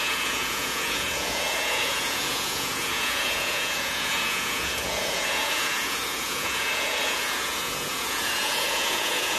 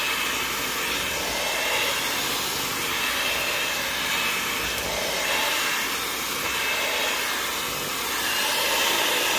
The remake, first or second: first